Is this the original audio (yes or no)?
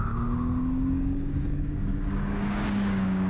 no